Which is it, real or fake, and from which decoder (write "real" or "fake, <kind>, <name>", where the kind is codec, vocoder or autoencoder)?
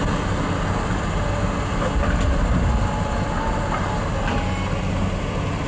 real